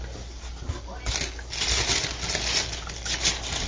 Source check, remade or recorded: recorded